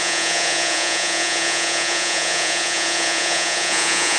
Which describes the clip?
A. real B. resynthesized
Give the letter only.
B